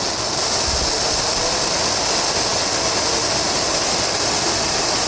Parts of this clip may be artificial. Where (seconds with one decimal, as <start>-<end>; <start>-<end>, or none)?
none